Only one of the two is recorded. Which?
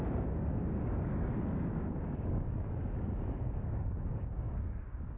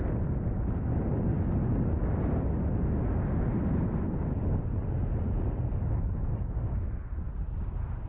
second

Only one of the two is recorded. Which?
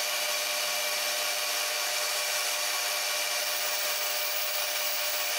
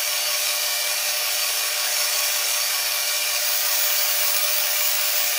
first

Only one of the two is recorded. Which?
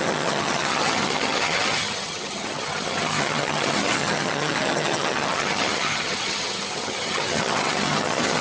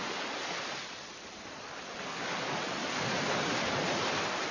second